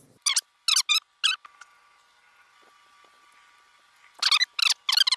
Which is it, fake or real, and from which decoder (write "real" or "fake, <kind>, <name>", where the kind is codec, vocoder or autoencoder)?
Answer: real